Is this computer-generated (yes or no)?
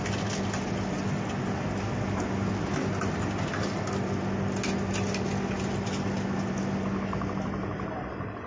no